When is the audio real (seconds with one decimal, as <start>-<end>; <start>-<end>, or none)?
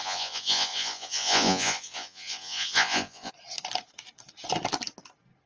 3.3-5.5